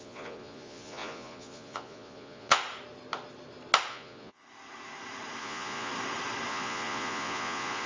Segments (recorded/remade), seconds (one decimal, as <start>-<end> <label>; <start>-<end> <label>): 0.0-2.6 remade; 2.6-3.9 recorded; 3.9-4.4 remade; 4.4-5.4 recorded; 5.4-5.9 remade; 5.9-6.5 recorded; 6.5-7.9 remade